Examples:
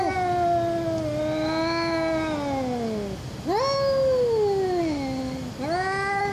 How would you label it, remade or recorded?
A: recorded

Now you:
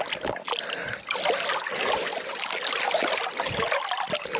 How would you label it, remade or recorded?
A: recorded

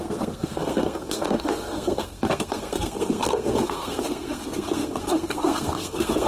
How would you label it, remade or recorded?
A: remade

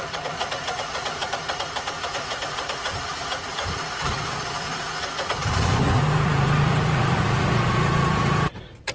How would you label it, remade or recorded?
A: remade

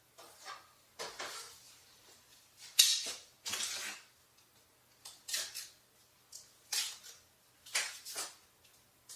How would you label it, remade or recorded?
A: recorded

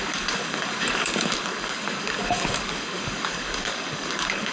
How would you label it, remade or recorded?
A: remade